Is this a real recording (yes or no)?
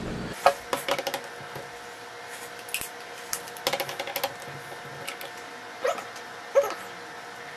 yes